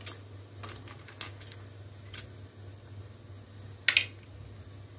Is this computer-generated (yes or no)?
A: no